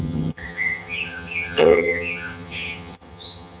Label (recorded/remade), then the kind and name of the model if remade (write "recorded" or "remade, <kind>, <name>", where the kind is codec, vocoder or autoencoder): remade, vocoder, HiFi-GAN